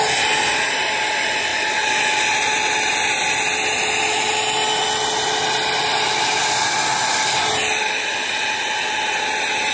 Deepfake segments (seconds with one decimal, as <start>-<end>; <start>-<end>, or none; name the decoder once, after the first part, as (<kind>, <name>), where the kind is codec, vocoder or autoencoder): none